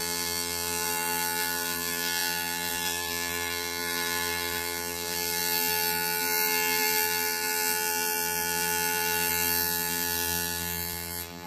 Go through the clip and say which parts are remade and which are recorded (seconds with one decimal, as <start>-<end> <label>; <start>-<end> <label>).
0.0-11.5 remade